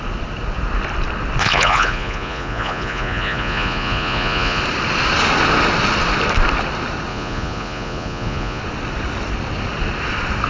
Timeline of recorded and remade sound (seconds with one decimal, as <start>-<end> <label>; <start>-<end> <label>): 0.0-1.4 recorded; 1.4-4.6 remade; 4.6-7.1 recorded; 7.1-8.6 remade; 8.6-10.5 recorded